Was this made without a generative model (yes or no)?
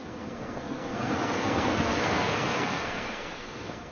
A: no